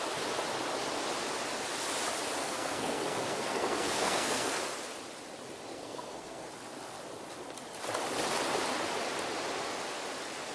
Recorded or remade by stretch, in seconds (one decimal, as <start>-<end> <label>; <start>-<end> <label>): 0.0-2.4 recorded; 2.4-4.6 remade; 4.6-5.7 recorded; 5.7-6.5 remade; 6.5-10.5 recorded